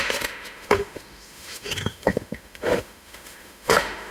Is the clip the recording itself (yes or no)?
no